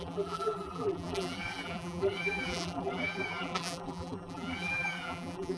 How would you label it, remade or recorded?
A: remade